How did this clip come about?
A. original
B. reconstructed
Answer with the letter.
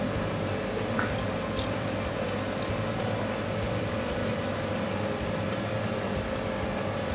A